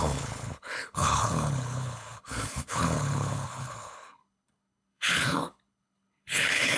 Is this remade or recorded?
remade